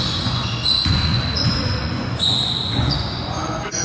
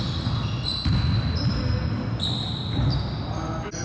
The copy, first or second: first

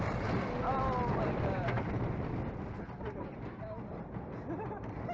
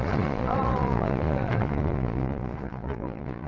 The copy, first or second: second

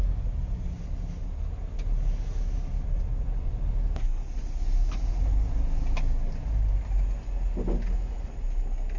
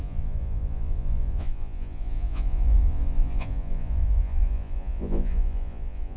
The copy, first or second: second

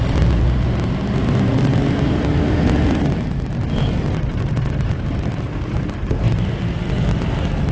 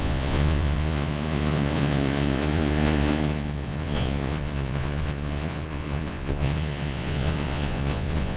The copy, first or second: second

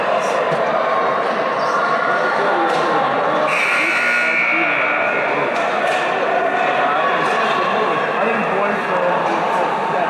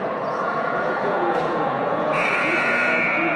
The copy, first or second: second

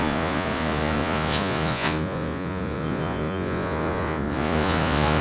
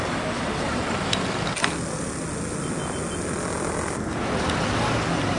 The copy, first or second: first